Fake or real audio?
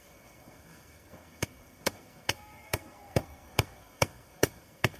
fake